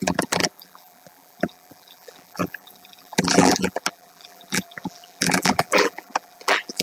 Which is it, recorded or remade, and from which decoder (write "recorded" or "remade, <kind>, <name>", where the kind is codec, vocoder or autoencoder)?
remade, vocoder, BigVGAN v2